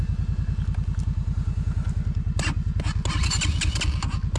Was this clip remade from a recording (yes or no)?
no